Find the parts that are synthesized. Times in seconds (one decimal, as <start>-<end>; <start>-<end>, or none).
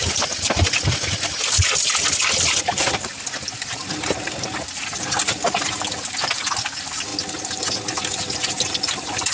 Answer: none